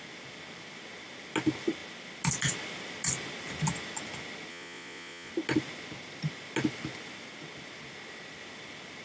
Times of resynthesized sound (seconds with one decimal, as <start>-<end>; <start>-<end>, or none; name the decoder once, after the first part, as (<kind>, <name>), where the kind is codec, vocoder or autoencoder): 4.5-5.3 (vocoder, Vocos)